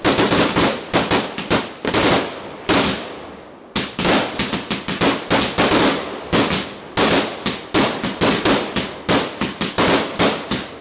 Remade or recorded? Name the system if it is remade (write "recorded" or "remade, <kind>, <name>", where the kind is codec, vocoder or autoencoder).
recorded